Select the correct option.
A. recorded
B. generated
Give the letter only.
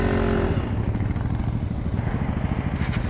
A